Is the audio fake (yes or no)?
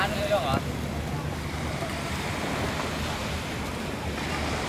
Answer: no